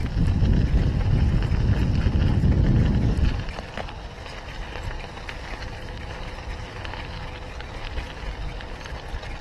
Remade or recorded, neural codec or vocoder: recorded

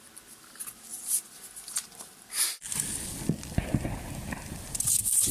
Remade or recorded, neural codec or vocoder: recorded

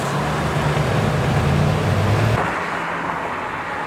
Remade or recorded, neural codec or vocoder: recorded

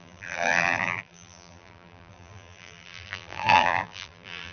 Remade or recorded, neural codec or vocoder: remade, vocoder, BigVGAN v2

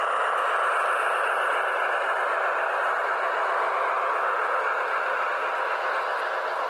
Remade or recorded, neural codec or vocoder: recorded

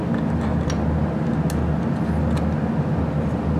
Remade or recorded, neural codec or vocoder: recorded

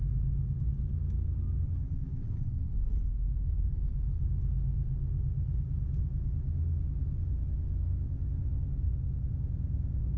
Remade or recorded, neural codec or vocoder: recorded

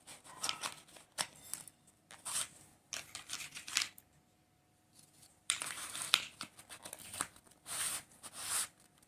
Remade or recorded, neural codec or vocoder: remade, vocoder, BigVGAN v2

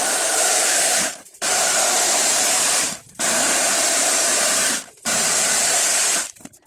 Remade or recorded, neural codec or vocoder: remade, vocoder, BigVGAN v2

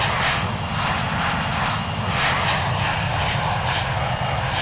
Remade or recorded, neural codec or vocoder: recorded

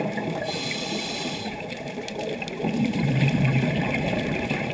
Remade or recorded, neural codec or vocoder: remade, vocoder, BigVGAN v2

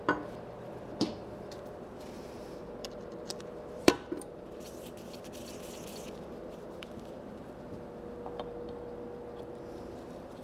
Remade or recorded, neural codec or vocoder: remade, vocoder, BigVGAN v2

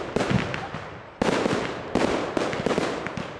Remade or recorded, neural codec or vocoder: recorded